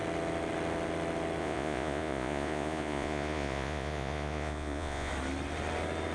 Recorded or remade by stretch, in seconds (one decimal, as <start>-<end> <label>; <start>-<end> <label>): 0.0-1.4 recorded; 1.4-5.1 remade; 5.1-6.1 recorded